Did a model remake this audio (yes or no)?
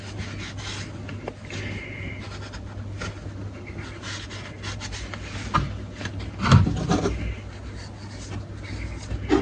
no